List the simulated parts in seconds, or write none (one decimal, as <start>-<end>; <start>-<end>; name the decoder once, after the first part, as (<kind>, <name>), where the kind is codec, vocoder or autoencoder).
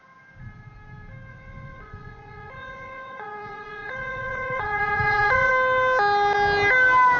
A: 1.3-5.5 (vocoder, Vocos)